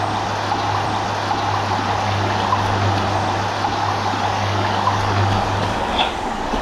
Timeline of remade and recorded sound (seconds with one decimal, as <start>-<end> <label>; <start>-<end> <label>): 0.0-3.7 recorded; 3.7-6.6 remade